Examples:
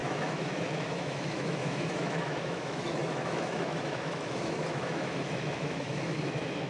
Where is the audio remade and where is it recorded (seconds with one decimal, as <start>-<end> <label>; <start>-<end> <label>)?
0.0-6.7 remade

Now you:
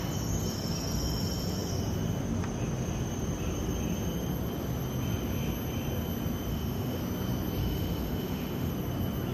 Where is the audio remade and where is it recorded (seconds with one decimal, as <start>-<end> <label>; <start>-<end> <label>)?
0.0-6.5 recorded; 6.5-7.0 remade; 7.0-7.6 recorded; 7.6-8.7 remade; 8.7-9.3 recorded

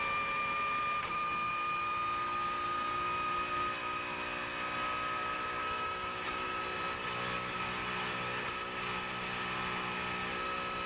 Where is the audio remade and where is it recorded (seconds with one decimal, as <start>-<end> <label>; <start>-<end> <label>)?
0.0-5.6 recorded; 5.6-6.6 remade; 6.6-10.9 recorded

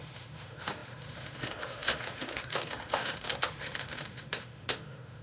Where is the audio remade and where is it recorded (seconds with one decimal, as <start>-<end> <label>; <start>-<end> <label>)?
0.0-5.2 remade

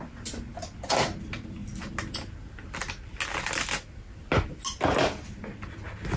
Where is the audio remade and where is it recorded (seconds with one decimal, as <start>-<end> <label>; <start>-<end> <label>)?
0.0-6.2 recorded

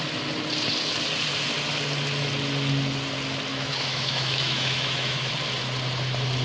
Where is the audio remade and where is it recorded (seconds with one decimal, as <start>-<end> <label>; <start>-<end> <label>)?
0.0-3.5 recorded; 3.5-5.3 remade; 5.3-6.4 recorded

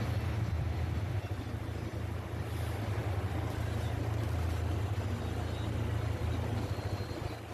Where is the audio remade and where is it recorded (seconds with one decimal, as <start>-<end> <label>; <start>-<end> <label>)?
0.0-7.5 recorded